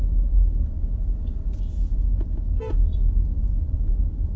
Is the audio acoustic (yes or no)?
yes